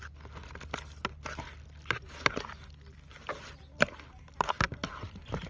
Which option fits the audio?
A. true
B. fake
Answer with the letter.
A